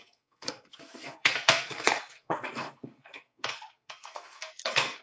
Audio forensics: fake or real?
fake